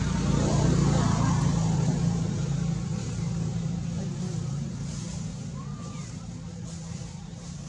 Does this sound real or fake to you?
fake